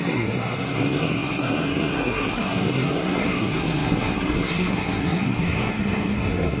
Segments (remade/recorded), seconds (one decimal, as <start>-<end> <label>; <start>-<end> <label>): 0.0-6.6 remade